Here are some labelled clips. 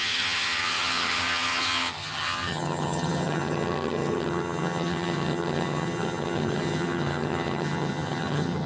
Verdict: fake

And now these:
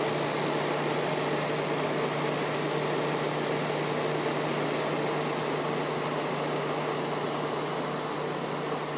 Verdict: real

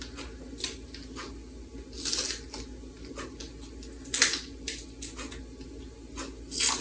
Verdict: real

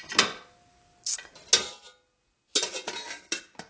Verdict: real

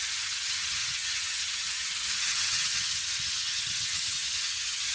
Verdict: fake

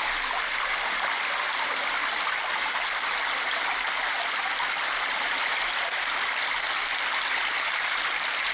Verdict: real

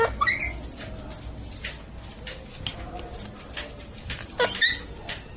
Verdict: real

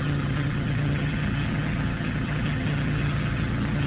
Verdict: fake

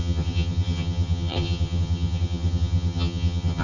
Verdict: fake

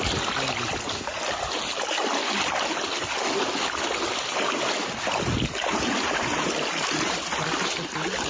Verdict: real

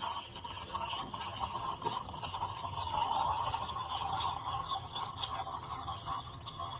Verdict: fake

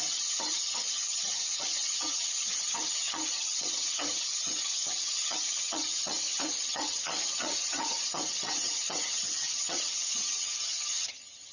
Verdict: fake